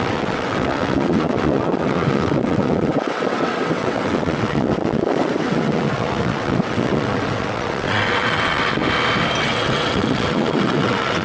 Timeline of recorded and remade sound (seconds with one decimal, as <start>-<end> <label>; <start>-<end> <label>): 0.0-8.8 remade; 8.8-9.4 recorded; 9.4-11.2 remade